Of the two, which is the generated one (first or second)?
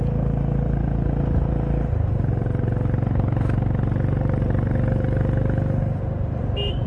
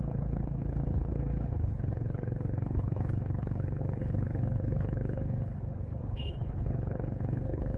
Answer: second